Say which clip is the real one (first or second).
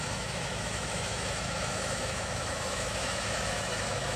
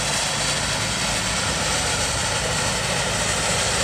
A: second